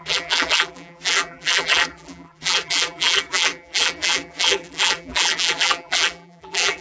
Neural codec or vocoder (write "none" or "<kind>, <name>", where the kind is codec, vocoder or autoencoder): vocoder, BigVGAN v2